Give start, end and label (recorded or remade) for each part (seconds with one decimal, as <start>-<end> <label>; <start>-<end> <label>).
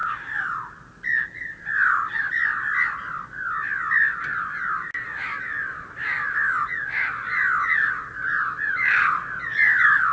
0.0-10.1 recorded